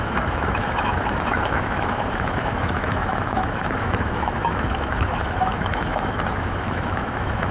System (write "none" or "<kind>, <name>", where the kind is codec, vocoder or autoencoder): autoencoder, DAC-VAE